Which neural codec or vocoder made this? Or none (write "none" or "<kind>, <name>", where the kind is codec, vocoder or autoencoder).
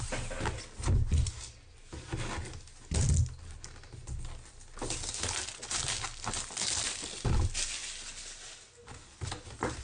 none